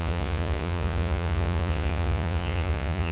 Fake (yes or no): yes